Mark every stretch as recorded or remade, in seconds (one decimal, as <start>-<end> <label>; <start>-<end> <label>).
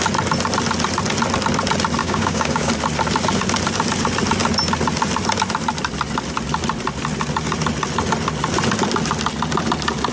0.0-2.0 recorded; 2.0-2.7 remade; 2.7-10.1 recorded